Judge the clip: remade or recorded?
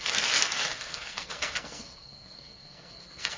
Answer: remade